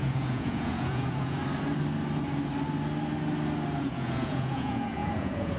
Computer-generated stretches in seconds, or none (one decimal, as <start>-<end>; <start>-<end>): 0.0-1.4; 3.8-5.6